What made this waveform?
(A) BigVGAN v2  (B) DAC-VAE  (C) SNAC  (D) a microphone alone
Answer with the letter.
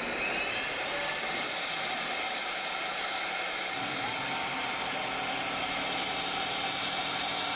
D